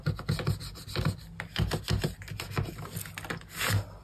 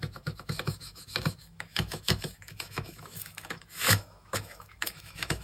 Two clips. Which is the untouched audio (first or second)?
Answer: first